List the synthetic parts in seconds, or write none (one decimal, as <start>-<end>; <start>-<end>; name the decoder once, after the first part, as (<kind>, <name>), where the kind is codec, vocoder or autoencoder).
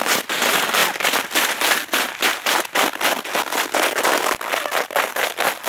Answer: none